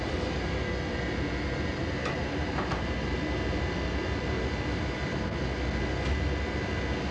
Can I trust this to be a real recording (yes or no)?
yes